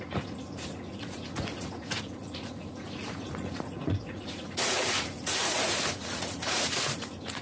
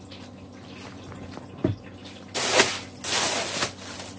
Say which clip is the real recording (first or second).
second